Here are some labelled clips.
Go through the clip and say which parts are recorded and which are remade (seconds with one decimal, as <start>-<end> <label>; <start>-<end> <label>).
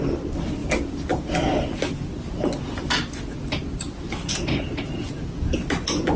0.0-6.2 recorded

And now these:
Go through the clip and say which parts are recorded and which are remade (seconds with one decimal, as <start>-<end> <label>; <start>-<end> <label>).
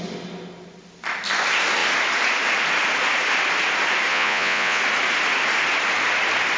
0.0-4.1 recorded; 4.1-4.8 remade; 4.8-6.6 recorded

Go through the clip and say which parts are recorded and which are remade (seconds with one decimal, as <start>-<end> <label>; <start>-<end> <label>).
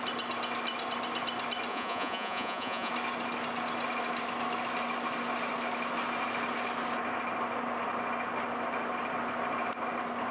0.0-1.7 recorded; 1.7-2.9 remade; 2.9-10.3 recorded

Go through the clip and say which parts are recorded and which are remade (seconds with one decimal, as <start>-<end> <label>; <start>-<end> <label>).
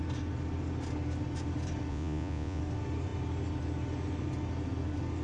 0.0-1.9 recorded; 1.9-2.6 remade; 2.6-5.2 recorded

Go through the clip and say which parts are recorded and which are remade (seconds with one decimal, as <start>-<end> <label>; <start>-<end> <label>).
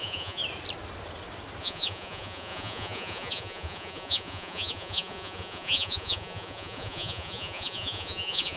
0.0-0.4 remade; 0.4-1.6 recorded; 1.6-8.6 remade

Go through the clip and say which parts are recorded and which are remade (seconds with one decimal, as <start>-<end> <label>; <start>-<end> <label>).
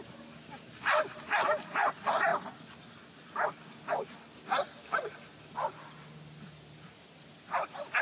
0.0-8.0 recorded